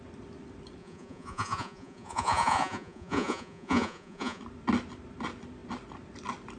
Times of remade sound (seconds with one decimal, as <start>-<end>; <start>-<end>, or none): 0.8-4.4